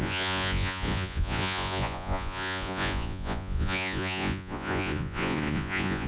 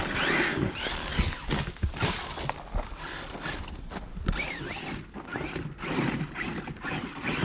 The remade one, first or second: first